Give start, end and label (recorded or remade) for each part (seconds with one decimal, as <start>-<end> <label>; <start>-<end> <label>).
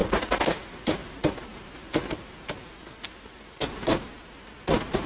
0.0-5.1 recorded